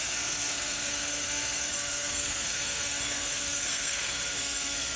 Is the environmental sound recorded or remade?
remade